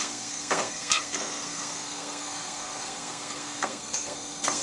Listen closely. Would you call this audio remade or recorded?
remade